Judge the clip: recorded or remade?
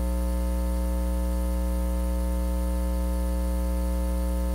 recorded